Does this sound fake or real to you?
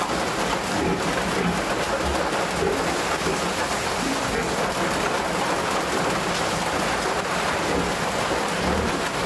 real